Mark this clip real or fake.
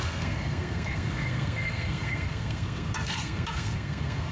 fake